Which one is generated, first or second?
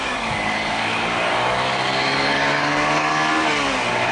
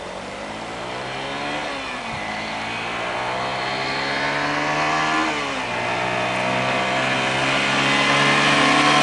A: first